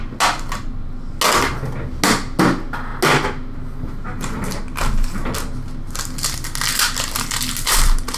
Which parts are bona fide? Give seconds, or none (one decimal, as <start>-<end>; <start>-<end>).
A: 0.0-8.2